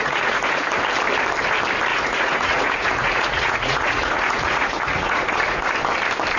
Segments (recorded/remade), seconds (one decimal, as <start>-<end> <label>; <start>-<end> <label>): 0.0-0.6 remade; 0.6-1.9 recorded; 1.9-5.7 remade; 5.7-6.4 recorded

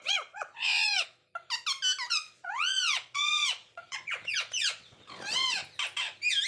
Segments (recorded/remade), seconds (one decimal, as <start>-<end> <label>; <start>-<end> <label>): 0.0-1.2 remade; 1.2-2.1 recorded; 2.1-5.6 remade; 5.6-6.5 recorded

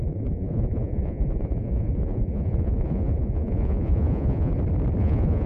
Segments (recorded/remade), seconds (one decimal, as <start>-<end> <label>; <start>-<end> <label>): 0.0-4.5 remade; 4.5-5.0 recorded; 5.0-5.5 remade

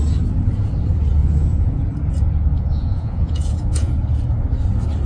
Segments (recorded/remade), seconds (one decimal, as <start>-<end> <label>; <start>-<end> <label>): 0.0-1.2 recorded; 1.2-1.8 remade; 1.8-2.5 recorded; 2.5-3.9 remade; 3.9-5.1 recorded